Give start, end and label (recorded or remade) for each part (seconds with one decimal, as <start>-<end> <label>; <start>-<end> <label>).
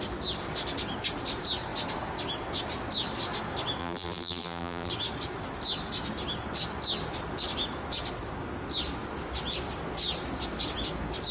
0.0-3.8 recorded; 3.8-4.9 remade; 4.9-11.3 recorded